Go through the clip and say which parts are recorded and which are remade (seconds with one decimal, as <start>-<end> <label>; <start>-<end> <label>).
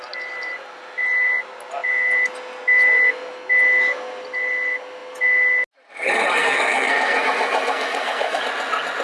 0.0-6.4 recorded; 6.4-8.4 remade; 8.4-9.0 recorded